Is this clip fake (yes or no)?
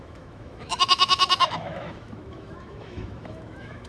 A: yes